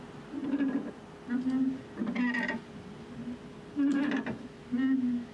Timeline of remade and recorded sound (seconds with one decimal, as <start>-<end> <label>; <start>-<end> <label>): 0.0-5.3 recorded